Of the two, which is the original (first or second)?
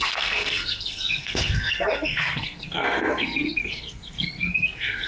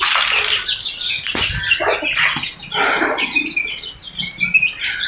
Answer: second